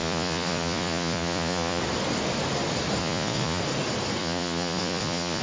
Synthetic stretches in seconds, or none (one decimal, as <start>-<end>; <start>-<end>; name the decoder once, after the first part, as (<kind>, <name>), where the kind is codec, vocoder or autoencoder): 0.0-1.8 (vocoder, Vocos); 3.0-3.6; 4.2-5.4